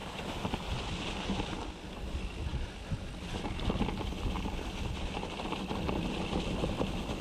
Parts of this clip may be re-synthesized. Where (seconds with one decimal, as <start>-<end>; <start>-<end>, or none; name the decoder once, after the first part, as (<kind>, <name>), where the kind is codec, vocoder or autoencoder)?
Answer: 0.0-0.7 (vocoder, BigVGAN v2)